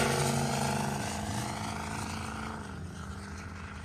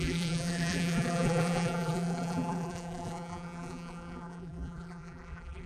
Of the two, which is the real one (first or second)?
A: first